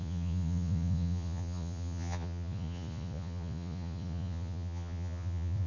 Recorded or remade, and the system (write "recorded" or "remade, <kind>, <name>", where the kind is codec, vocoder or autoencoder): remade, vocoder, Vocos